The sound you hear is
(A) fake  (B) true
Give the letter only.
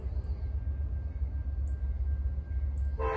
B